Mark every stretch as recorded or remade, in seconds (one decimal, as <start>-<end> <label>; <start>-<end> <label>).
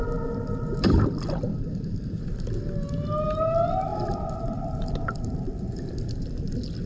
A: 0.0-1.5 recorded; 1.5-2.2 remade; 2.2-6.9 recorded